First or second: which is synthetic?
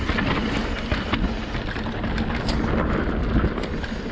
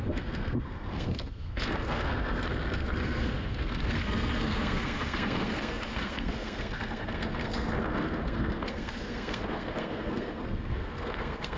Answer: second